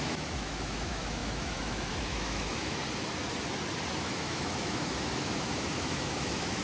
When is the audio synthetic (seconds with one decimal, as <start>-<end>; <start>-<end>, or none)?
0.0-2.8; 4.0-6.6